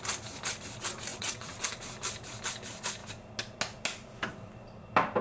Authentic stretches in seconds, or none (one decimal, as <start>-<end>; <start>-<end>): 0.0-1.1; 1.6-5.2